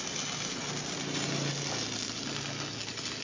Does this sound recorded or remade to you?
recorded